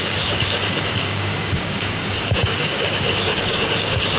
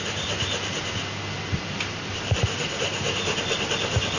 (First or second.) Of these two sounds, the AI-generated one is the first